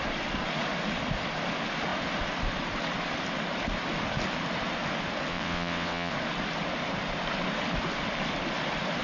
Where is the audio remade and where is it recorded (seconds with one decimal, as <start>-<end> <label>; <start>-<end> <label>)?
0.0-5.3 recorded; 5.3-6.1 remade; 6.1-9.0 recorded